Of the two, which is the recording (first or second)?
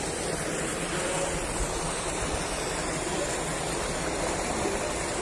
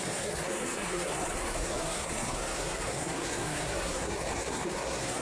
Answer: first